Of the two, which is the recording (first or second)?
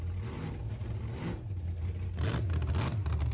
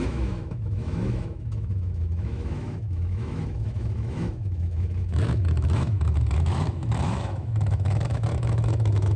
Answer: first